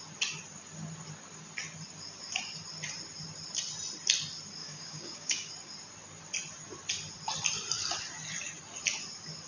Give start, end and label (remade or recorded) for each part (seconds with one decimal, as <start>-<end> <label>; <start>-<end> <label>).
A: 0.0-4.6 recorded; 4.6-5.5 remade; 5.5-9.5 recorded

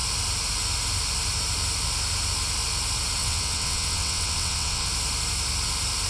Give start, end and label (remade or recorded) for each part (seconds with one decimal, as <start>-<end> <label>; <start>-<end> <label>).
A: 0.0-3.2 recorded; 3.2-4.9 remade; 4.9-6.1 recorded